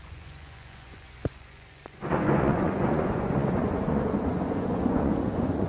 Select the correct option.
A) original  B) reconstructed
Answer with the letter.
B